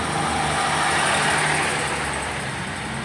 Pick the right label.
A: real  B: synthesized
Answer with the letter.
A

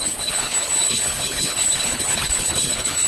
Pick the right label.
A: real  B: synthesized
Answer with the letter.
B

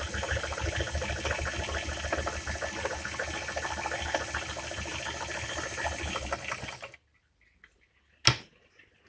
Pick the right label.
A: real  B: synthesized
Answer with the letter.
A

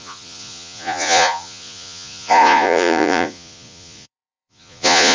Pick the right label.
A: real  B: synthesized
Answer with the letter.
B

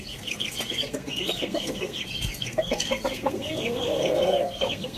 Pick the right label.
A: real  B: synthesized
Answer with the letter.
B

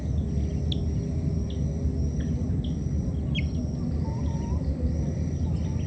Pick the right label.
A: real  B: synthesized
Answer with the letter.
A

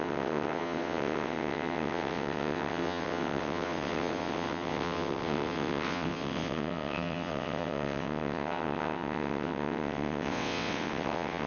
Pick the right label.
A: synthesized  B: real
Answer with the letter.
A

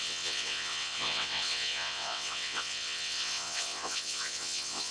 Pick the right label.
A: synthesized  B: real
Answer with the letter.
A